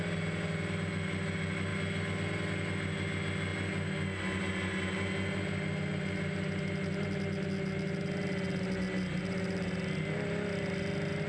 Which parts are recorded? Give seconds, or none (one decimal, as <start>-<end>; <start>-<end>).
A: 0.0-11.3